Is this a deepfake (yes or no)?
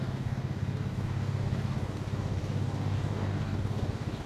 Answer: yes